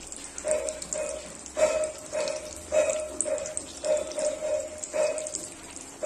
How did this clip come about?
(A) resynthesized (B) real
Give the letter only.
B